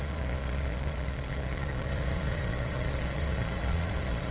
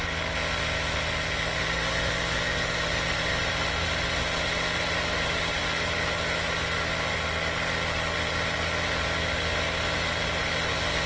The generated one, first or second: first